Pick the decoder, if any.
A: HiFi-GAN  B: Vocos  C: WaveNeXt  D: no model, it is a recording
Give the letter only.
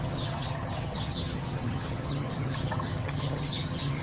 A